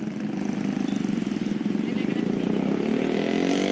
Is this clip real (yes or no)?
yes